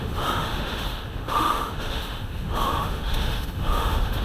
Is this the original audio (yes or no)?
no